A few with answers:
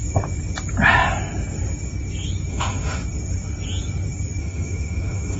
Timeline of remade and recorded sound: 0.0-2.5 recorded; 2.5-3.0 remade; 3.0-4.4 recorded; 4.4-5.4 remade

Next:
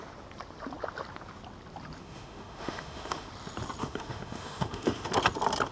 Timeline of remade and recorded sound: 0.0-2.0 recorded; 2.0-3.3 remade; 3.3-3.8 recorded; 3.8-5.1 remade; 5.1-5.7 recorded

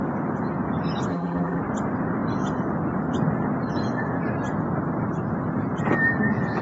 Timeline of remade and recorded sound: 0.0-1.1 recorded; 1.1-1.6 remade; 1.6-6.6 recorded

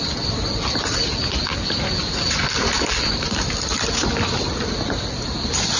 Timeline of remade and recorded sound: 0.0-5.8 recorded